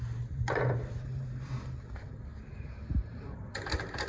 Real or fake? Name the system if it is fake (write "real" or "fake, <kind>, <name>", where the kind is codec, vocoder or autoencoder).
fake, vocoder, BigVGAN v2